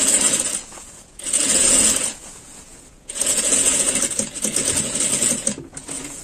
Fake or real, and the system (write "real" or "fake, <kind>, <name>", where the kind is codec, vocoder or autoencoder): fake, vocoder, Vocos